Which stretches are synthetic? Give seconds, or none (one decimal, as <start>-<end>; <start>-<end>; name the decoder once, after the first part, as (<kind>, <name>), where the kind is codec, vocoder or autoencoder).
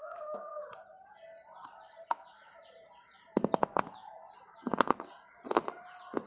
0.0-0.6 (codec, SNAC)